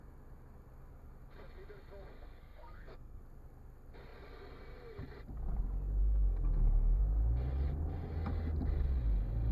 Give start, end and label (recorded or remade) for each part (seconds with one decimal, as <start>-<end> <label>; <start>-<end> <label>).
0.0-2.1 recorded; 2.1-3.2 remade; 3.2-6.0 recorded; 6.0-7.0 remade; 7.0-9.5 recorded

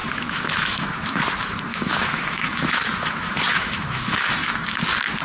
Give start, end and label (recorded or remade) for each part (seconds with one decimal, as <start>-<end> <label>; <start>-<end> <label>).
0.0-1.2 remade; 1.2-1.7 recorded; 1.7-4.8 remade; 4.8-5.2 recorded

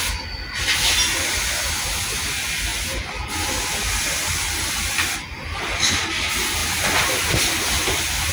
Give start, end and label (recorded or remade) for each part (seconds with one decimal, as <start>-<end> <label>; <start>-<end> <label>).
0.0-8.3 recorded

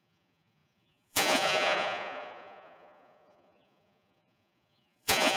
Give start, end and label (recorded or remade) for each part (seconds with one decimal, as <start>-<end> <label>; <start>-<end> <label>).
0.0-5.4 remade

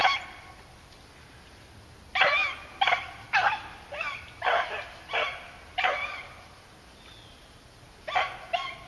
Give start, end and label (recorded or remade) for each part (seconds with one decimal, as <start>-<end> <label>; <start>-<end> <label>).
0.0-0.5 remade; 0.5-2.1 recorded; 2.1-6.5 remade; 6.5-8.9 recorded

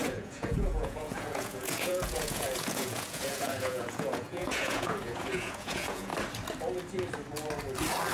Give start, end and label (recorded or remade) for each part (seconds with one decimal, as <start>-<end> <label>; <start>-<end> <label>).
0.0-6.1 remade; 6.1-8.1 recorded